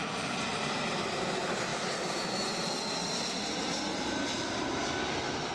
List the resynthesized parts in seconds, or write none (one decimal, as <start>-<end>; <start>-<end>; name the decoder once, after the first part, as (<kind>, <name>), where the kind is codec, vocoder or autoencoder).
none